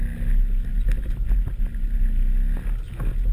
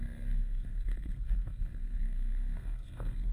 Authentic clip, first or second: first